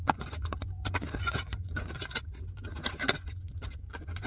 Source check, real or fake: fake